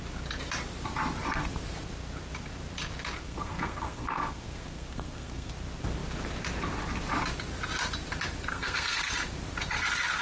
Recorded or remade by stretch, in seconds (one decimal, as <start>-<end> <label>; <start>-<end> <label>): 0.0-3.2 recorded; 3.2-5.5 remade; 5.5-8.5 recorded; 8.5-9.1 remade; 9.1-10.2 recorded

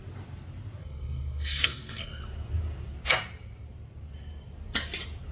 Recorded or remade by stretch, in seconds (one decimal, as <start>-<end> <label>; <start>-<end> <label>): 0.0-0.8 recorded; 0.8-2.2 remade; 2.2-5.3 recorded